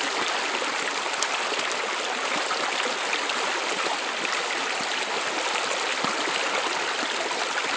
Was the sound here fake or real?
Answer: real